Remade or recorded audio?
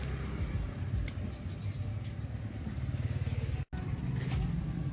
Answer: recorded